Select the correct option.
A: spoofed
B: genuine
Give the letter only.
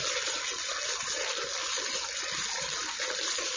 B